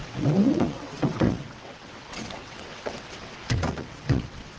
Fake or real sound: fake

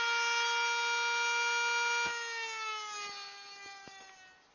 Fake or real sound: real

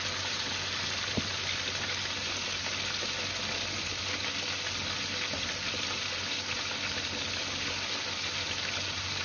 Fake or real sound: real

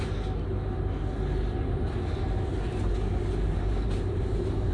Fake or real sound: real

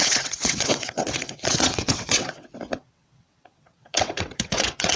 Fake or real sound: fake